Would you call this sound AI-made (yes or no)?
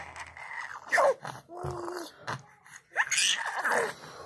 no